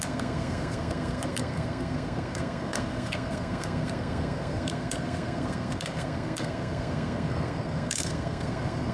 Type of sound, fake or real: fake